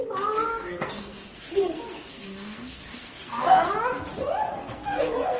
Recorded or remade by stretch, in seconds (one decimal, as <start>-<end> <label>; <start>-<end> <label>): 0.0-0.5 recorded; 0.5-3.7 remade; 3.7-4.5 recorded; 4.5-5.4 remade